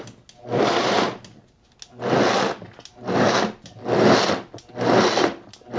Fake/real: real